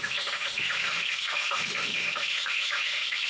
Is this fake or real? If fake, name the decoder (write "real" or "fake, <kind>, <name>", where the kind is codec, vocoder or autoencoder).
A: fake, autoencoder, DAC-VAE